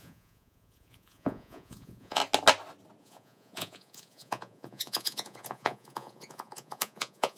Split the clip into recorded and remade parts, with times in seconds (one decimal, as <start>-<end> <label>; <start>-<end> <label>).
0.0-2.2 remade; 2.2-3.0 recorded; 3.0-7.4 remade